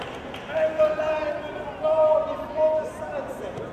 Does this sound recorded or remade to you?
remade